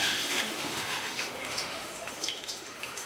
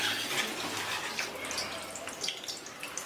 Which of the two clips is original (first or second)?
second